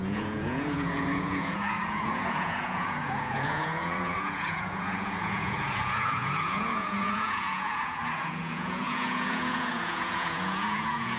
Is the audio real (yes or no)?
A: no